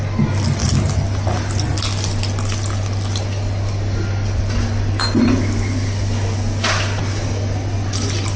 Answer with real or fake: real